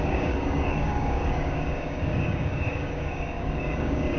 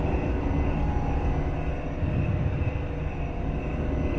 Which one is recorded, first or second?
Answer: second